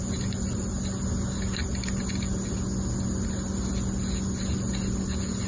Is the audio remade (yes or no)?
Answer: no